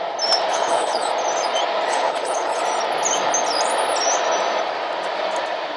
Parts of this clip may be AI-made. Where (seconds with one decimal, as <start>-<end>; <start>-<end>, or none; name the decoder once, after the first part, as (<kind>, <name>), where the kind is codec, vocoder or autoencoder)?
0.5-1.1 (codec, HILCodec); 1.9-2.6